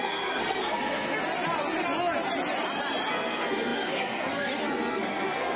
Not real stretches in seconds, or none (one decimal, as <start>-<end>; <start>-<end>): 0.0-1.2; 3.1-5.6